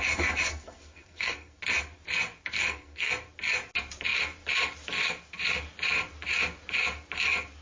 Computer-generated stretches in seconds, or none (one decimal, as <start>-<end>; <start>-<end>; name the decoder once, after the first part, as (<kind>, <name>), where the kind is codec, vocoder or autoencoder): 0.5-1.6 (codec, SNAC); 2.6-3.1